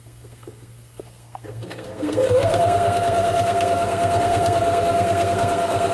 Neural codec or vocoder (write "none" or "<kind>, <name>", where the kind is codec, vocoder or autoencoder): codec, SNAC